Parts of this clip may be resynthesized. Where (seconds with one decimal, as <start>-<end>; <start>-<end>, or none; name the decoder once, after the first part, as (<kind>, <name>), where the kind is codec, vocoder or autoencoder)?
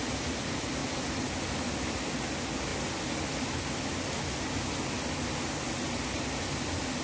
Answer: none